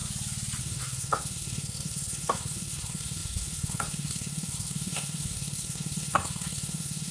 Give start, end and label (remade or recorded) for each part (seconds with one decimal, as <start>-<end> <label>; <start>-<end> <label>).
0.0-0.6 recorded; 0.6-7.1 remade